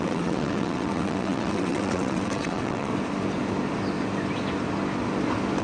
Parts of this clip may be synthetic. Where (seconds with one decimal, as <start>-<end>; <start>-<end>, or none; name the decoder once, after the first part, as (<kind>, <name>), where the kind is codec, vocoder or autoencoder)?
0.0-2.9 (vocoder, WaveNeXt)